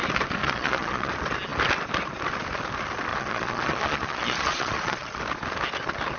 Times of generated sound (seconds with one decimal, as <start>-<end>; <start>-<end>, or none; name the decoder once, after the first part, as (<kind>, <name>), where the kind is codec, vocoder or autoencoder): 0.4-1.1 (vocoder, Vocos); 3.1-5.2